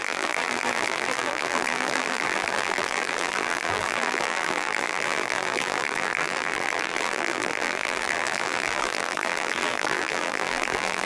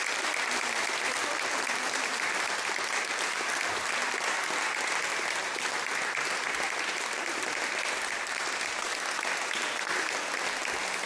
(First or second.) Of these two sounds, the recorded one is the second